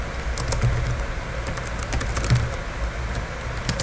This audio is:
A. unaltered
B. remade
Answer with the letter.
A